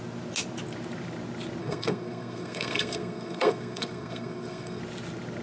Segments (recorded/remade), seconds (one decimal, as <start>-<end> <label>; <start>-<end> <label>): 0.0-1.6 recorded; 1.6-4.8 remade; 4.8-5.4 recorded